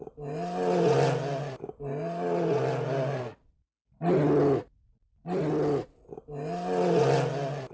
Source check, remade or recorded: recorded